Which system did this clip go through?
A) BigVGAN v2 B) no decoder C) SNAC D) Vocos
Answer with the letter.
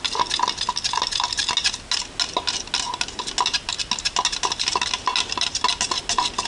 B